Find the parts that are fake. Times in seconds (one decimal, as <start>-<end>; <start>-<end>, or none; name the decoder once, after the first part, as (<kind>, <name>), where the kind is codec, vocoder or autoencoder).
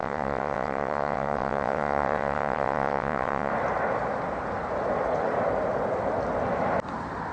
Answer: 0.0-3.5 (vocoder, WaveNeXt)